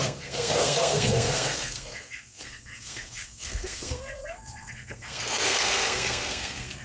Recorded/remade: remade